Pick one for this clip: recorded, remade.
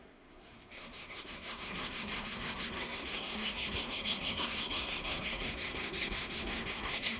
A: remade